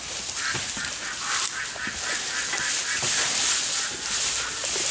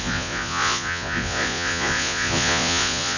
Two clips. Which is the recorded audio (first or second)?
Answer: first